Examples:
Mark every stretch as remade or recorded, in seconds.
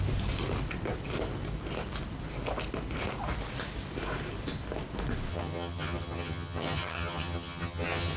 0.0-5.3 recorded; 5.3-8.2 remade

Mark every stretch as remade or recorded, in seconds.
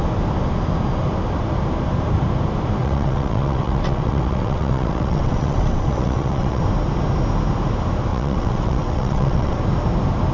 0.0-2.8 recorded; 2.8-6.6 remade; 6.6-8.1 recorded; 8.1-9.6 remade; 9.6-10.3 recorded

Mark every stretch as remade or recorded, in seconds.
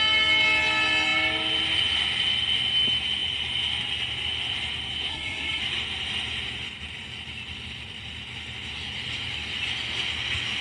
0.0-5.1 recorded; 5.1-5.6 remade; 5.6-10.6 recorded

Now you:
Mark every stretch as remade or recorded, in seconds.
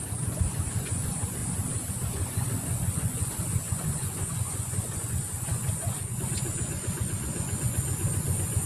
0.0-1.4 remade; 1.4-1.9 recorded; 1.9-8.7 remade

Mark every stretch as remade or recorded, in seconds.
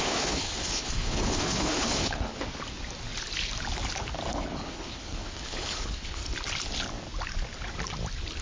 0.0-2.5 remade; 2.5-4.3 recorded; 4.3-6.2 remade; 6.2-8.4 recorded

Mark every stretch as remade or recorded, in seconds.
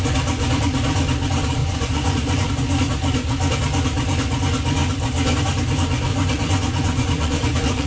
0.0-1.6 recorded; 1.6-2.5 remade; 2.5-6.1 recorded; 6.1-7.9 remade